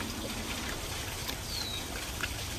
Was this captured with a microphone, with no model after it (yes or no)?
yes